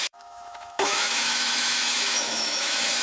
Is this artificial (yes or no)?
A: yes